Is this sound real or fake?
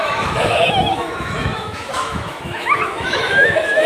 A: fake